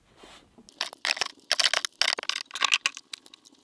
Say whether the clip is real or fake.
real